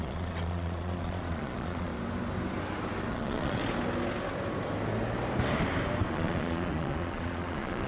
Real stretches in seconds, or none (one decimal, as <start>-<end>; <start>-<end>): 1.9-3.1; 3.6-6.1